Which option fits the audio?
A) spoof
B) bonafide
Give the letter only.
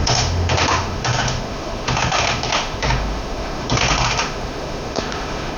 A